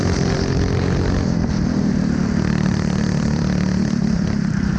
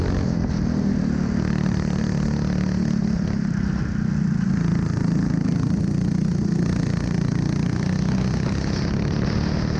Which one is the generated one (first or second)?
first